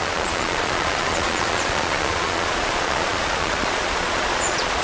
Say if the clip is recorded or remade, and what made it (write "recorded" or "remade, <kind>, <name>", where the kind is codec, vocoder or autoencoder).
remade, vocoder, Vocos